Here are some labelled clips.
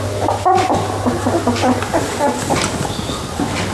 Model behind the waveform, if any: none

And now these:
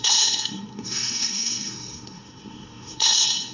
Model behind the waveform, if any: codec, SNAC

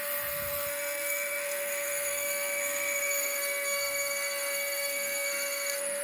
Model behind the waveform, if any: codec, SNAC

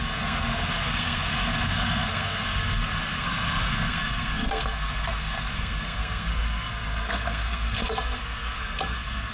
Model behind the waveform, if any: codec, SNAC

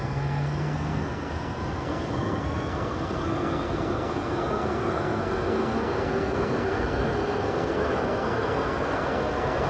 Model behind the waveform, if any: codec, SNAC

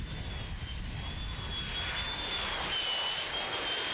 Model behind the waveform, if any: none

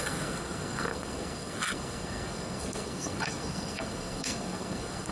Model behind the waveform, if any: codec, SNAC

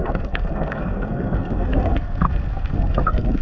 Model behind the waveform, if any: codec, SNAC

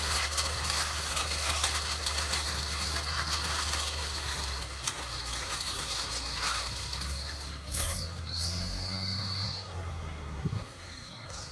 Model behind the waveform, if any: codec, SNAC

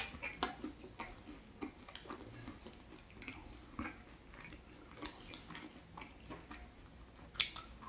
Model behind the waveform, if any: none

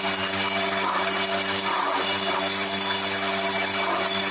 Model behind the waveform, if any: none